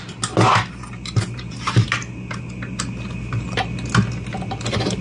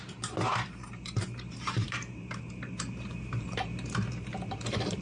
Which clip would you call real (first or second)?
first